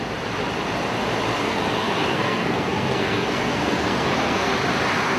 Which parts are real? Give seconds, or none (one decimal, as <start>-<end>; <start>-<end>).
0.0-1.4; 4.5-5.2